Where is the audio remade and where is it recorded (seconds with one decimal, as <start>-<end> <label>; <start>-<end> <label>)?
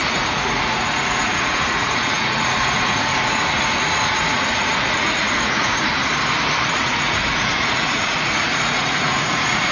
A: 0.0-6.0 remade; 6.0-6.8 recorded; 6.8-9.7 remade